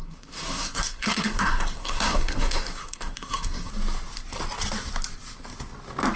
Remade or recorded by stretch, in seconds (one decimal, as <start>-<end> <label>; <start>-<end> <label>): 0.0-3.7 remade; 3.7-6.2 recorded